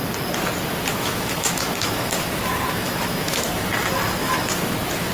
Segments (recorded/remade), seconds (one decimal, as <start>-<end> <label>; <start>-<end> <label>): 0.0-0.9 recorded; 0.9-3.8 remade; 3.8-4.2 recorded; 4.2-5.1 remade